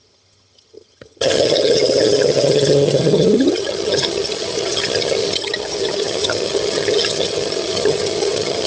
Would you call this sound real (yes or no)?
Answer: no